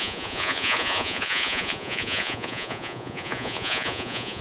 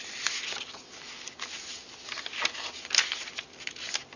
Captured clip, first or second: second